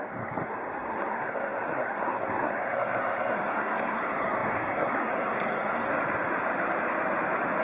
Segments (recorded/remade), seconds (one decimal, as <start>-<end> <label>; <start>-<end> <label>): 0.0-5.9 remade; 5.9-7.6 recorded